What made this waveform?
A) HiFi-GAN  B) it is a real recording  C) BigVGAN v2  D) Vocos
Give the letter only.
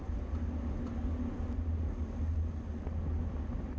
B